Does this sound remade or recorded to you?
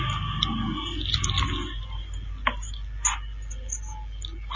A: recorded